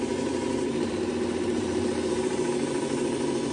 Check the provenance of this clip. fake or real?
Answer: fake